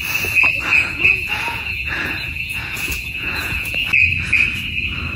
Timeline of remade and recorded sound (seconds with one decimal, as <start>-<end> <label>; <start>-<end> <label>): 0.0-0.7 recorded; 0.7-3.8 remade; 3.8-5.2 recorded